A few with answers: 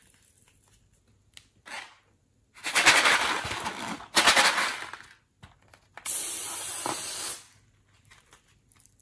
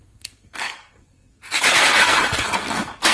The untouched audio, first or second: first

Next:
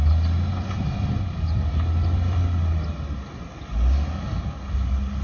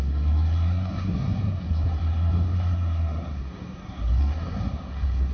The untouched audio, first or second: first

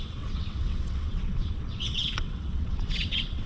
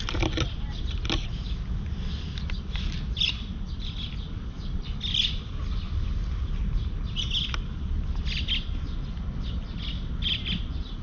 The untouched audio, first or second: second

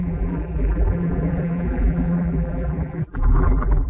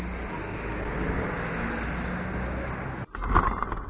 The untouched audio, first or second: second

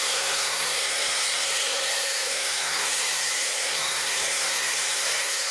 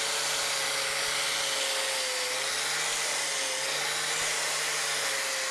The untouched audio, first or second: second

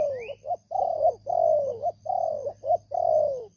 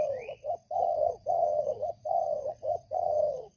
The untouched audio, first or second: first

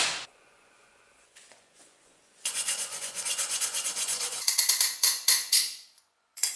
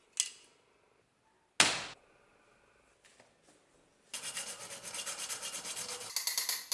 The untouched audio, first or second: second